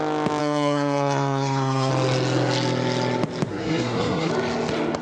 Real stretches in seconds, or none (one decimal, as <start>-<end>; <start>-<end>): 0.0-0.4; 1.9-3.5; 4.3-5.0